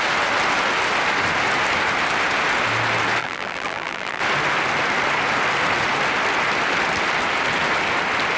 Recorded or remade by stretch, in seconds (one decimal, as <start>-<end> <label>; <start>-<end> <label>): 0.0-3.2 recorded; 3.2-4.2 remade; 4.2-8.4 recorded